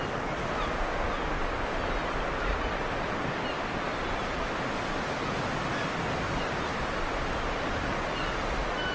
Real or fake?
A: real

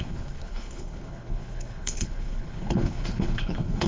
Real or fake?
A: fake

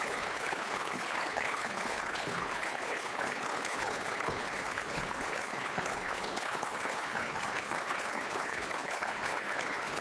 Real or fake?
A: fake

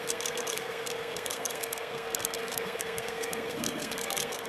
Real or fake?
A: fake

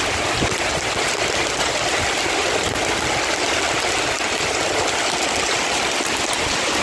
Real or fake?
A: real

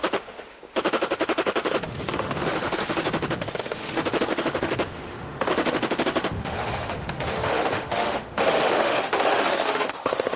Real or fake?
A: fake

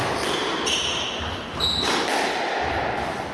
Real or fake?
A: real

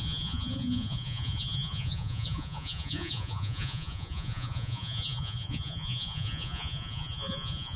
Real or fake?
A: fake